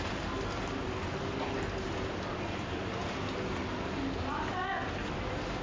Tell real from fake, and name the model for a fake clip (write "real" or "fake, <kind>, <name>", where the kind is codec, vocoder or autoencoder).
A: real